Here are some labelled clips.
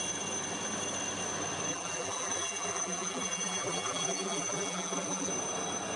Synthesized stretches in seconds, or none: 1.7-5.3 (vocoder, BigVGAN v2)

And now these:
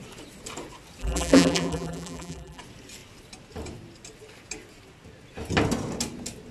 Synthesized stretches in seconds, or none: 1.0-2.6 (vocoder, BigVGAN v2)

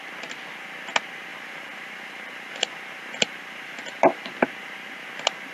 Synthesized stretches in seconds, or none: 1.3-4.4 (vocoder, BigVGAN v2)